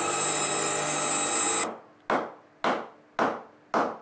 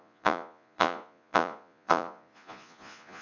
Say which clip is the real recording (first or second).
first